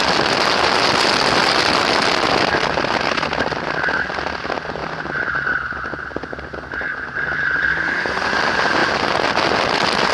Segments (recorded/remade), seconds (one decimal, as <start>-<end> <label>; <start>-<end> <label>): 0.0-10.1 recorded

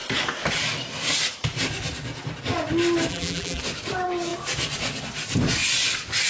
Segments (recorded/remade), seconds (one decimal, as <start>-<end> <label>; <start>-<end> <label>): 0.0-3.1 recorded; 3.1-3.6 remade; 3.6-6.3 recorded